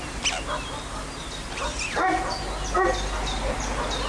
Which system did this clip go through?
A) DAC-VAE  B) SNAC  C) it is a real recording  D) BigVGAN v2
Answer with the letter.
C